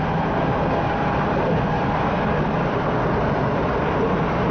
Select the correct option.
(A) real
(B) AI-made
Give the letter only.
A